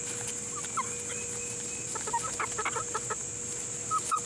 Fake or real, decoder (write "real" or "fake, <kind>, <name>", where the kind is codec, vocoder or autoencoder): real